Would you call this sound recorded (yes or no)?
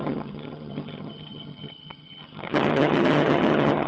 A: no